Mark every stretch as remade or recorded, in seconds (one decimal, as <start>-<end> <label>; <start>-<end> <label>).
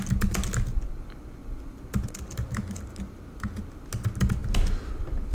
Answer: 0.0-5.3 recorded